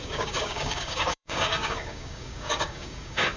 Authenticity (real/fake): fake